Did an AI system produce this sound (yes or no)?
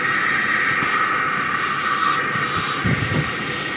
no